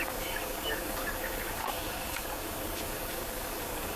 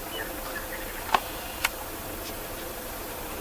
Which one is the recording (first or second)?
second